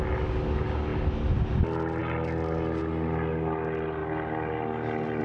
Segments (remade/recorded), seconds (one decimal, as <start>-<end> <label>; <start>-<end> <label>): 0.0-5.2 recorded